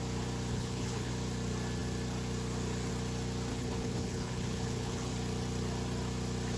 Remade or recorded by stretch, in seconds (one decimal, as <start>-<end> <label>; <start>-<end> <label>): 0.0-0.5 recorded; 0.5-1.1 remade; 1.1-3.5 recorded; 3.5-5.1 remade; 5.1-6.6 recorded